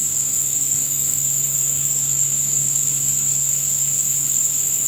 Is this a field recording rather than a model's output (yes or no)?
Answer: no